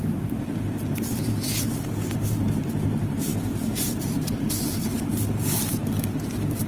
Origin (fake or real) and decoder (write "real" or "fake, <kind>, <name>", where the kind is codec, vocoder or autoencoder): fake, vocoder, BigVGAN v2